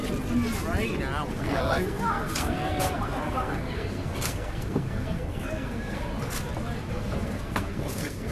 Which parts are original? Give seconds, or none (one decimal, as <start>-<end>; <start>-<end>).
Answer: 0.0-1.3; 6.1-6.9